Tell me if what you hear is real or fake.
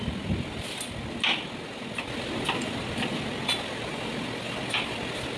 real